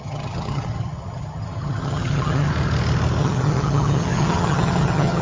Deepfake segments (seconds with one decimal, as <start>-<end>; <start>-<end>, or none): 0.0-2.5; 3.2-5.2